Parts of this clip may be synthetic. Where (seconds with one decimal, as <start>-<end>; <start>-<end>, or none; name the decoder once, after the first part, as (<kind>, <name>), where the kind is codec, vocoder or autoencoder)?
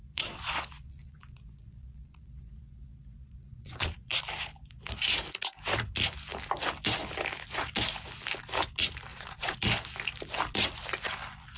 0.0-4.1 (vocoder, Vocos); 9.1-9.6